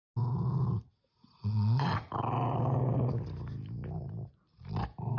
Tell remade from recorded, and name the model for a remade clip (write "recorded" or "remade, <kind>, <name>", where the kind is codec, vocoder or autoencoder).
recorded